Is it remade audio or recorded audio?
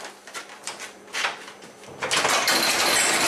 recorded